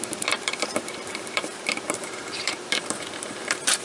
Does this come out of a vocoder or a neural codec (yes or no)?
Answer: yes